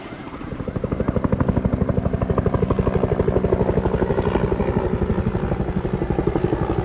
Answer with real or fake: real